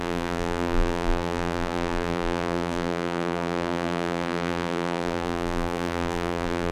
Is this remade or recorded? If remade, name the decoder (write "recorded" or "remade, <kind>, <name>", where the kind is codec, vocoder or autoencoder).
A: remade, vocoder, BigVGAN v2